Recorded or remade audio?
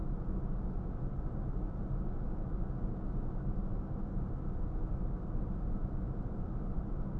recorded